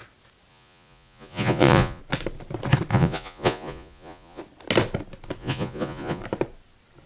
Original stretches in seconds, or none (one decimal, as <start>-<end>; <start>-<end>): 0.0-0.5; 2.0-2.9; 4.4-5.4; 6.2-7.1

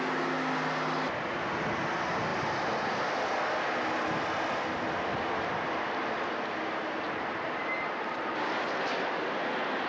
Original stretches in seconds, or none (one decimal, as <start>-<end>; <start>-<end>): 0.0-9.9